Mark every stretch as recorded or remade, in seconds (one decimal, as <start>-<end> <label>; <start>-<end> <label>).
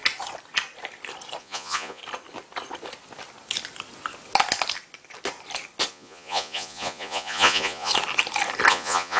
0.0-1.4 recorded; 1.4-2.0 remade; 2.0-5.9 recorded; 5.9-7.9 remade; 7.9-8.7 recorded; 8.7-9.2 remade